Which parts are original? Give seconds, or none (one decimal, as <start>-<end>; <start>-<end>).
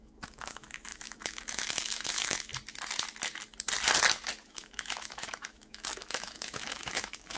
2.5-4.4